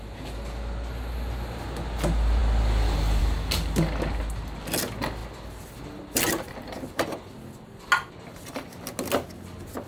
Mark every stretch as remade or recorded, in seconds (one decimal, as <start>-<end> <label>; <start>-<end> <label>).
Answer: 0.0-9.9 recorded